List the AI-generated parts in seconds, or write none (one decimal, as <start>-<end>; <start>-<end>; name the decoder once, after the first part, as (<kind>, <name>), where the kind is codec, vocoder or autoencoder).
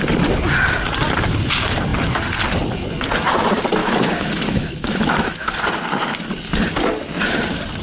3.8-5.5 (autoencoder, DAC-VAE)